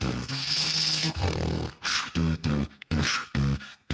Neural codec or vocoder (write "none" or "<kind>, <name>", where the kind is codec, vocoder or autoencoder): codec, SNAC